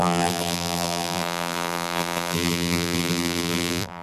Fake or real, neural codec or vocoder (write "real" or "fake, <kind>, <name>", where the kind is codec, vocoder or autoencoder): fake, vocoder, BigVGAN v2